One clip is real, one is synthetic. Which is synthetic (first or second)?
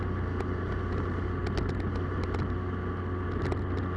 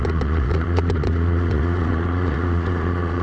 second